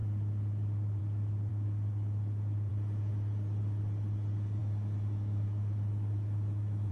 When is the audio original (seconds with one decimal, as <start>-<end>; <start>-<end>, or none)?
0.0-1.5; 2.7-4.6